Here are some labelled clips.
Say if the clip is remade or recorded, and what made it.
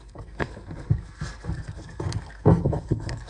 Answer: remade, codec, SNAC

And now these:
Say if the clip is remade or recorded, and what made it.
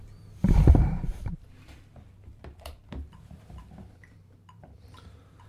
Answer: remade, vocoder, BigVGAN v2